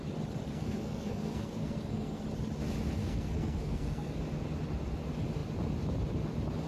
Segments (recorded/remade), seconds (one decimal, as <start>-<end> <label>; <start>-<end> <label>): 0.0-0.5 recorded; 0.5-2.2 remade; 2.2-3.0 recorded; 3.0-4.2 remade; 4.2-6.7 recorded